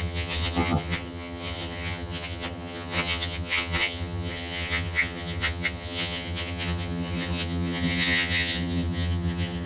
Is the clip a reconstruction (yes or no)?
yes